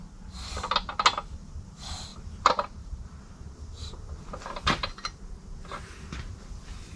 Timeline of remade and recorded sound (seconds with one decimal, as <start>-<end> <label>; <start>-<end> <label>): 0.0-2.1 recorded; 2.1-5.2 remade; 5.2-7.0 recorded